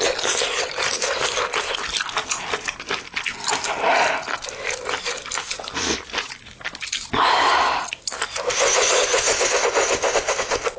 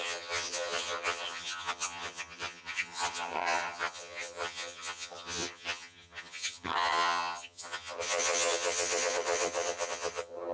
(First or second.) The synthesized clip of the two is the second